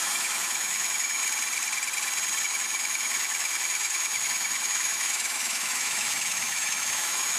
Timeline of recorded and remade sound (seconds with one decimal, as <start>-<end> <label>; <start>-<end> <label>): 0.0-1.2 remade; 1.2-2.4 recorded; 2.4-7.4 remade